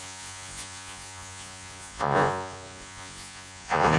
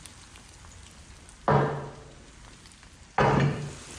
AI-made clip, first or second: first